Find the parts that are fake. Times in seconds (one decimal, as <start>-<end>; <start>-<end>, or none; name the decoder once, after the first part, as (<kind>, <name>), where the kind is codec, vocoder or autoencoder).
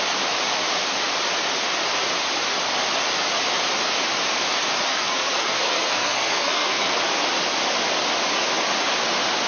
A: 4.9-6.9 (codec, SNAC)